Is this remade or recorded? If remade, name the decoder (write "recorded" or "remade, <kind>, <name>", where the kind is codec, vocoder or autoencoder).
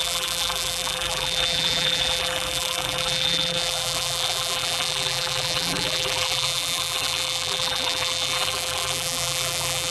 remade, vocoder, BigVGAN v2